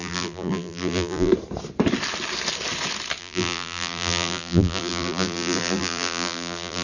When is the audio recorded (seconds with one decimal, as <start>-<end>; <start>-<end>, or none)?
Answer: 1.3-3.2